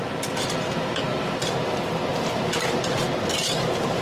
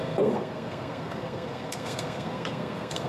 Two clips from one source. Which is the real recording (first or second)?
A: first